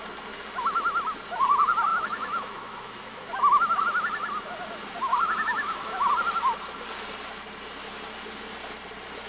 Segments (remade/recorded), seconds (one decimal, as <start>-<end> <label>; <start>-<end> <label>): 0.0-1.9 recorded; 1.9-3.3 remade; 3.3-5.1 recorded; 5.1-6.1 remade; 6.1-9.3 recorded